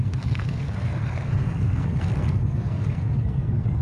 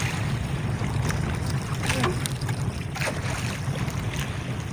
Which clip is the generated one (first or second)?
first